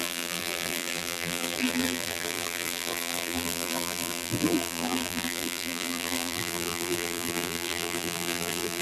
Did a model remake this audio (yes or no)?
yes